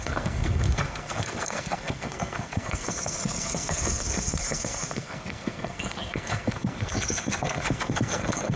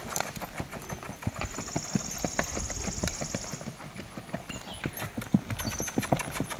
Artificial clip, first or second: first